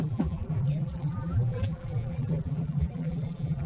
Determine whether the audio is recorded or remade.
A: remade